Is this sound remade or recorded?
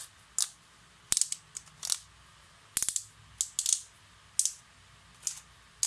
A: recorded